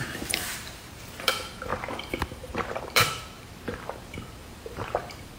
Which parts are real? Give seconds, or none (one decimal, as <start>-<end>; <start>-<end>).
none

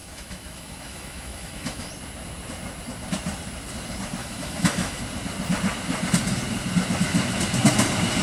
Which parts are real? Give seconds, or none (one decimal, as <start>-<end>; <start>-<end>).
1.9-4.2; 5.0-8.2

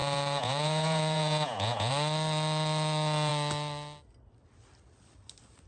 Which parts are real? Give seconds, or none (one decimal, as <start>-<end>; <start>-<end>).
1.9-5.7

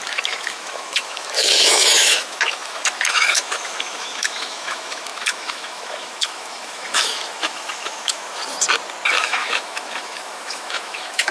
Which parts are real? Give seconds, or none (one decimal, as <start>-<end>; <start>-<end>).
8.4-9.1

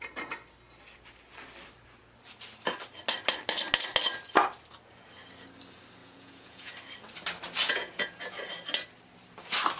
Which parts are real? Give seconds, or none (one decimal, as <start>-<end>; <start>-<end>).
0.0-6.0; 6.7-7.6; 8.5-9.8

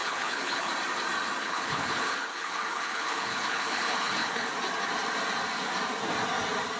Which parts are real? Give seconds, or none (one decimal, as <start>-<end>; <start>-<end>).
0.7-1.4; 4.5-6.8